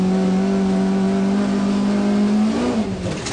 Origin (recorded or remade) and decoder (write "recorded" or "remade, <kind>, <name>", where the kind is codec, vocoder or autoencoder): recorded